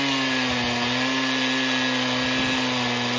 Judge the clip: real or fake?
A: real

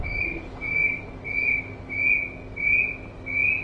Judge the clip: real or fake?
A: real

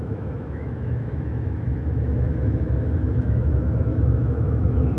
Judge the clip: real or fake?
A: fake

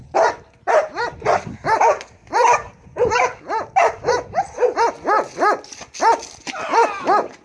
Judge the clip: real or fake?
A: real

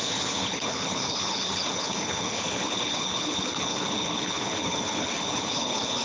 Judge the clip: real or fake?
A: fake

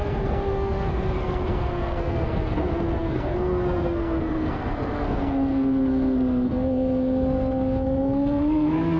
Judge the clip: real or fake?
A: fake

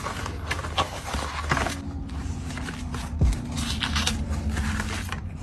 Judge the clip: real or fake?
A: real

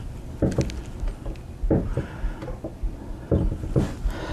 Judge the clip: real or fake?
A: real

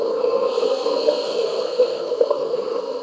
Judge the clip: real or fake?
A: fake